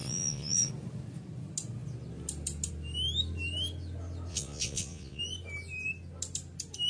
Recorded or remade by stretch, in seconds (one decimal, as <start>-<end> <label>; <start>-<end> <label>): 0.0-0.7 remade; 0.7-4.3 recorded; 4.3-5.2 remade; 5.2-6.9 recorded